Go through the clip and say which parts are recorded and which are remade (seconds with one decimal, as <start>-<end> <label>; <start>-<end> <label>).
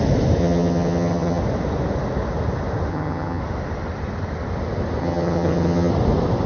0.0-0.4 recorded; 0.4-1.4 remade; 1.4-2.9 recorded; 2.9-3.4 remade; 3.4-5.0 recorded; 5.0-5.9 remade; 5.9-6.5 recorded